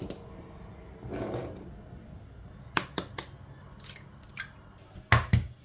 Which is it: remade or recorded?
recorded